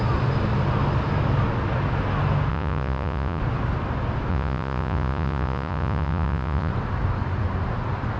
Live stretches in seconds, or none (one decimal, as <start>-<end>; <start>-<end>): 0.0-2.5; 3.4-4.3; 6.7-8.2